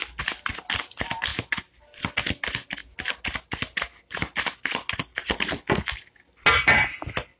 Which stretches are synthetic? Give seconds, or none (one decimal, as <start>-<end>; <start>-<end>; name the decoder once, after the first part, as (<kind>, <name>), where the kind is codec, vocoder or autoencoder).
none